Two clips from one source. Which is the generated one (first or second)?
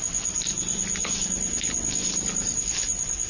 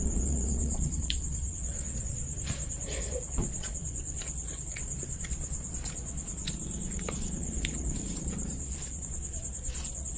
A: second